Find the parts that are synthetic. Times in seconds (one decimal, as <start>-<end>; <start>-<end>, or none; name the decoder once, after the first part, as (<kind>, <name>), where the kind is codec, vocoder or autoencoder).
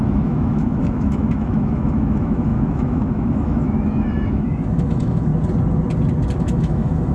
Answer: 0.0-5.3 (autoencoder, DAC-VAE); 6.4-7.1